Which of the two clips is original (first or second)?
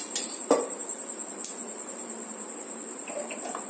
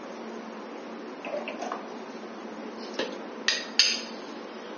second